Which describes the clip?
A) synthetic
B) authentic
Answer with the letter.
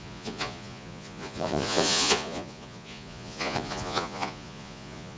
A